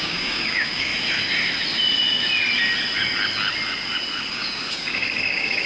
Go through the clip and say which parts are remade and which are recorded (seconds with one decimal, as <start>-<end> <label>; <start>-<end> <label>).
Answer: 0.0-0.9 remade; 0.9-4.3 recorded; 4.3-5.7 remade